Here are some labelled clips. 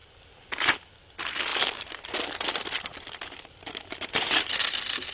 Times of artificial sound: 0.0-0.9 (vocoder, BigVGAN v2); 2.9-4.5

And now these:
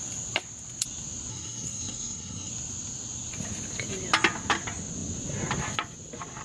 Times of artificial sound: 1.3-2.5 (codec, SNAC)

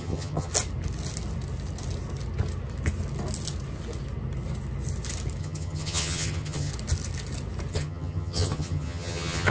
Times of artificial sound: 0.0-0.5 (vocoder, HiFi-GAN); 5.4-6.7; 7.7-9.5

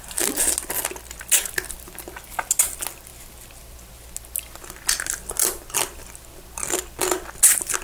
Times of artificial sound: none

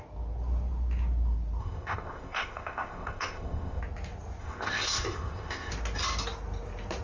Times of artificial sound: 1.6-3.8 (codec, ZipCodec); 4.4-5.7